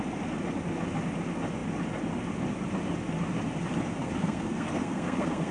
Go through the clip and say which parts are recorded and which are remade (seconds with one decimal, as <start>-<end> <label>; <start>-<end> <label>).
0.0-4.0 recorded; 4.0-5.5 remade